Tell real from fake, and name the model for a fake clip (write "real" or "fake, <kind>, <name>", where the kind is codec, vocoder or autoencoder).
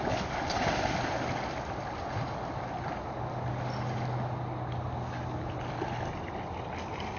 real